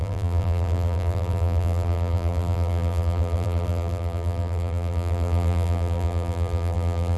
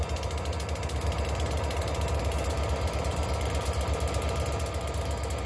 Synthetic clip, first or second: first